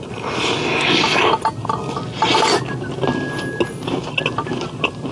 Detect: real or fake real